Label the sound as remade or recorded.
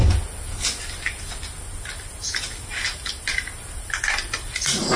recorded